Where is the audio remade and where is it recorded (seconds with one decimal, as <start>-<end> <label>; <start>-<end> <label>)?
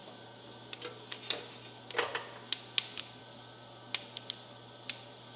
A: 0.0-5.4 recorded